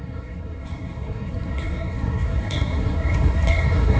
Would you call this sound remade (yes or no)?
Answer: yes